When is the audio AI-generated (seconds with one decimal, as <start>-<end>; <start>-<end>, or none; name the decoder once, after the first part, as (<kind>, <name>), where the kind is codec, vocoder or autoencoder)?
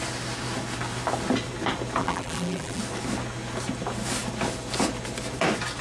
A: 2.0-2.8 (vocoder, BigVGAN v2)